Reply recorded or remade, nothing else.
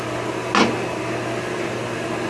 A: recorded